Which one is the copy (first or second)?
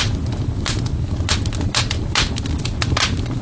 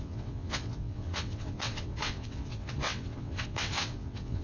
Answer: second